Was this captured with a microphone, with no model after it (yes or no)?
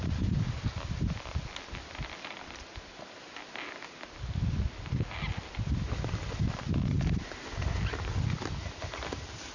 yes